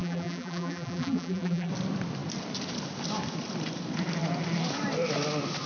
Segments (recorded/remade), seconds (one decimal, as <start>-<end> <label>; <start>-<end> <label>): 0.0-1.7 remade; 1.7-5.7 recorded